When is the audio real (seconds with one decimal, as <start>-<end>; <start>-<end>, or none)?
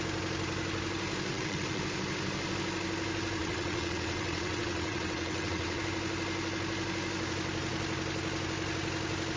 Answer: 0.0-1.3; 1.8-3.4; 5.8-9.4